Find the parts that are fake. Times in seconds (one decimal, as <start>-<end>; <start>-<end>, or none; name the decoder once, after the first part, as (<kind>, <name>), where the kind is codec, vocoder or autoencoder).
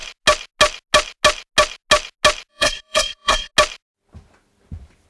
2.5-3.5 (codec, SNAC)